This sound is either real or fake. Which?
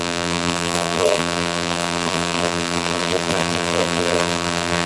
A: fake